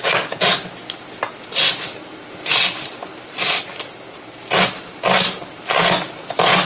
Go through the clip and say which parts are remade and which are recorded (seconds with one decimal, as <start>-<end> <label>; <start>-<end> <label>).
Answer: 0.0-6.6 recorded